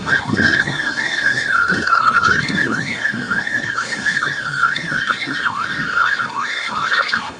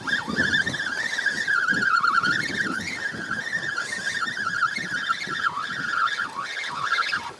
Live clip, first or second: second